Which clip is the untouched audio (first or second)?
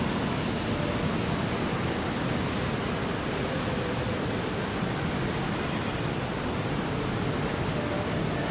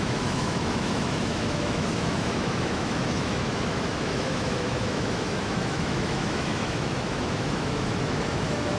first